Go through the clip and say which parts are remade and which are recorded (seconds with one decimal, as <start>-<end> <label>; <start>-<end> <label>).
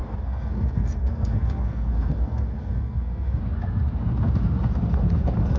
0.0-3.4 remade; 3.4-5.6 recorded